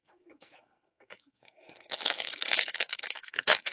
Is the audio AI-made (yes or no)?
yes